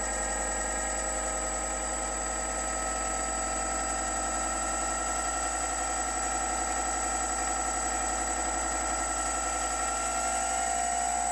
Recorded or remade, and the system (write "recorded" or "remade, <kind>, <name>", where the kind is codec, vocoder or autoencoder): recorded